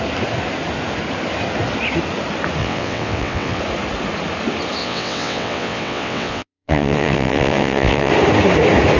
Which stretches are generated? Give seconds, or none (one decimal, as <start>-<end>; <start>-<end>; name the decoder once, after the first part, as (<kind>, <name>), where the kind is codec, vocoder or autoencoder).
2.6-3.6 (vocoder, WaveNeXt); 4.8-8.1